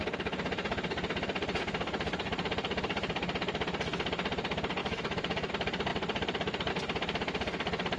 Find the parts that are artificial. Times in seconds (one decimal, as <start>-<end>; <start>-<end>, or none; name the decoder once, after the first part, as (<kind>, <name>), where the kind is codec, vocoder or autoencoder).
4.8-5.5 (autoencoder, DAC-VAE)